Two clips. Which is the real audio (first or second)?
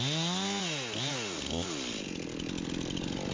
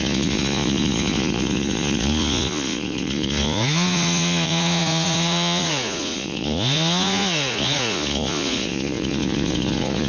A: first